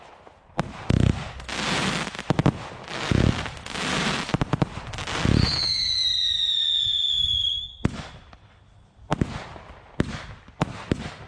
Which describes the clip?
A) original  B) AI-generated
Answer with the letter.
A